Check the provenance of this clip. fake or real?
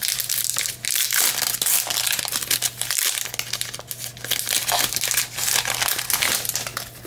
real